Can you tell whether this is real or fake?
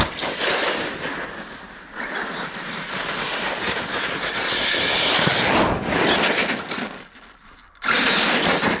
real